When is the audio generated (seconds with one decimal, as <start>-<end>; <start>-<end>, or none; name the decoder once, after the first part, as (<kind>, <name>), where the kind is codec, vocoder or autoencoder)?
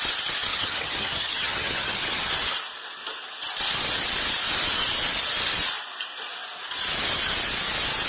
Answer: 0.5-2.3 (vocoder, HiFi-GAN)